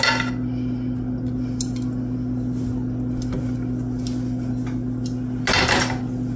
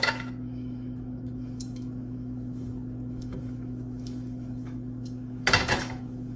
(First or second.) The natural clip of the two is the first